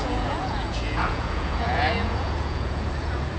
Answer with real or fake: fake